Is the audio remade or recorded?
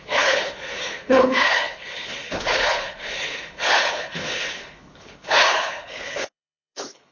remade